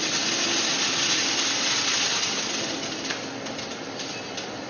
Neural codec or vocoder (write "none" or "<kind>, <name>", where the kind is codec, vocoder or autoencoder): none